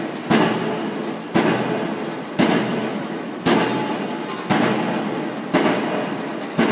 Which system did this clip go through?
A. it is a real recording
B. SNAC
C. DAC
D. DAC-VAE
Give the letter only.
A